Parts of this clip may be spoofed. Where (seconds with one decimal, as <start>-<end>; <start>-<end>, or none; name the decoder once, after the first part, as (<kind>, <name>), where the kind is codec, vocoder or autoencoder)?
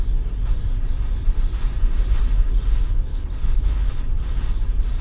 3.1-3.9 (codec, HILCodec)